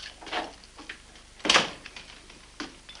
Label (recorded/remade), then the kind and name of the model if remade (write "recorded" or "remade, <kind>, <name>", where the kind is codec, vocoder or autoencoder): recorded